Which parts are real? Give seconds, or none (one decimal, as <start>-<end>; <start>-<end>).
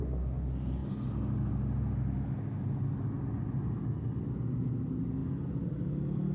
0.0-6.3